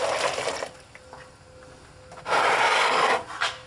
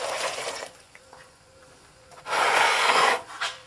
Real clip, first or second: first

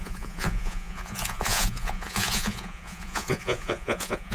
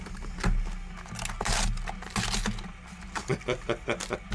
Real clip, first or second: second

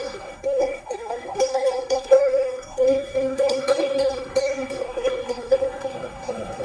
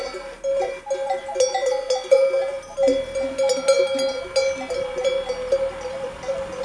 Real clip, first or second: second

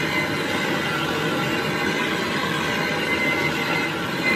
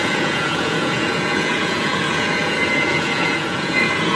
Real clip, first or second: first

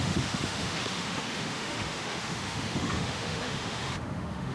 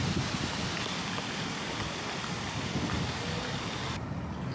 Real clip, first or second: second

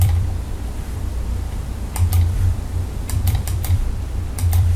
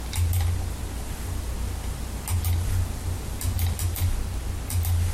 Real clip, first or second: second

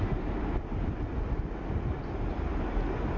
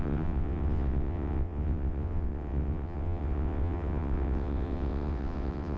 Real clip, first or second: first